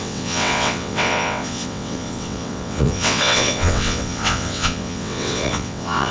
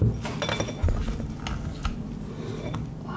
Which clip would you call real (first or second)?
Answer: second